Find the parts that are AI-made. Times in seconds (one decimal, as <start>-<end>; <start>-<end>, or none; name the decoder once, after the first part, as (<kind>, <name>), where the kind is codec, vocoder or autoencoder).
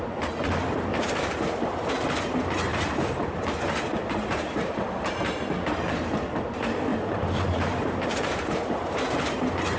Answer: 0.9-1.9 (vocoder, BigVGAN v2); 2.7-5.1; 6.9-9.3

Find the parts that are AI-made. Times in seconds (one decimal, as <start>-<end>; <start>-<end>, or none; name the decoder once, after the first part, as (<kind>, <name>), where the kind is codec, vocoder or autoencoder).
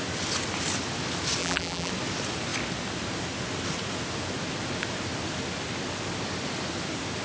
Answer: 1.4-1.9 (vocoder, BigVGAN v2)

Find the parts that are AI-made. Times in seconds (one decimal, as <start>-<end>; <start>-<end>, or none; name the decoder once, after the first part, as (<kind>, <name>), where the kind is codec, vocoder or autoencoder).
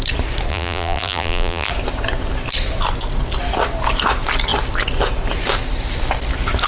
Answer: 0.5-1.7 (vocoder, BigVGAN v2)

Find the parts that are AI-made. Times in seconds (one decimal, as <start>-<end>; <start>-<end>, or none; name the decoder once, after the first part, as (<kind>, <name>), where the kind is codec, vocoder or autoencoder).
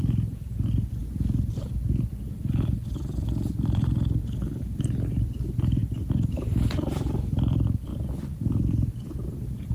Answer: 0.0-1.0 (vocoder, BigVGAN v2); 1.5-5.8; 6.7-9.7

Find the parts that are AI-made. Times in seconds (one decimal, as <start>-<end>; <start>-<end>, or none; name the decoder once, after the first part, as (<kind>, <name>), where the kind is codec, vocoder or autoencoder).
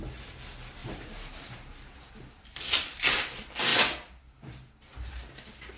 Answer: 0.8-1.8 (vocoder, BigVGAN v2)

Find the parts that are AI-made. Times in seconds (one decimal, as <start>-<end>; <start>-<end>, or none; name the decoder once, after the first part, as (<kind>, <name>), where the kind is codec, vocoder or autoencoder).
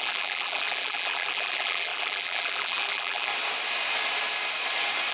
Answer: 0.0-3.3 (vocoder, BigVGAN v2)